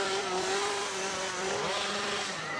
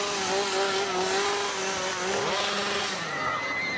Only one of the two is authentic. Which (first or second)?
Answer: second